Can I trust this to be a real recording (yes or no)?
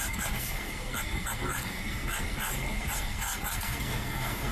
no